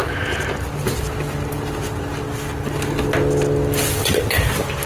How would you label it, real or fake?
real